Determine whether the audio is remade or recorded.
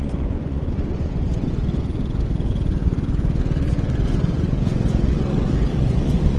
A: remade